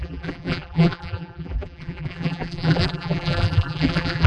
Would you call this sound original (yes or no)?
no